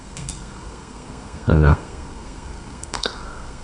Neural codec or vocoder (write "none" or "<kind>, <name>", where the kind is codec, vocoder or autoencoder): codec, SNAC